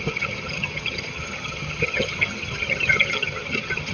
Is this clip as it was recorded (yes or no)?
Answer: no